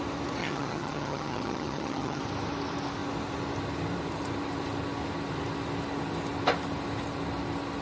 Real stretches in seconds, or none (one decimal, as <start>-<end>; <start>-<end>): 0.0-0.4; 2.2-7.8